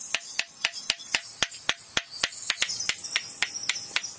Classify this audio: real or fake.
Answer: real